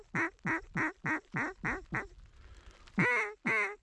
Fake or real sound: real